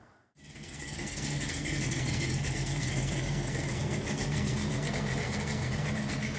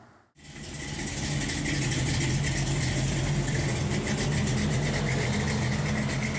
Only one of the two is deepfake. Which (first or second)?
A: first